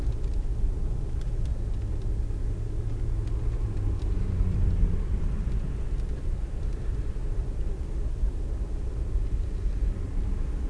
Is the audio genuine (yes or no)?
yes